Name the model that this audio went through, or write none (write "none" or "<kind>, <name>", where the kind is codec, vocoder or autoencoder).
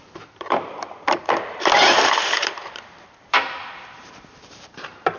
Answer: vocoder, BigVGAN v2